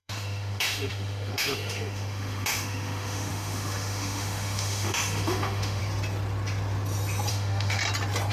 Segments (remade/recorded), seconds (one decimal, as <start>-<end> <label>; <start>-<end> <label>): 0.0-5.8 remade; 5.8-7.3 recorded; 7.3-7.8 remade; 7.8-8.3 recorded